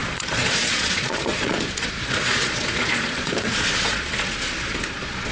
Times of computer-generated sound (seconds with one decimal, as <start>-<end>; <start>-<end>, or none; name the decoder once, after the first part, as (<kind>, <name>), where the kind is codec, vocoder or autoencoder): 0.0-5.3 (vocoder, Vocos)